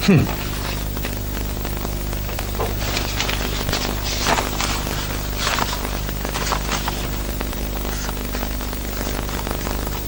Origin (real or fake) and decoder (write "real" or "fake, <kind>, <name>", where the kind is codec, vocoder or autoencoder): real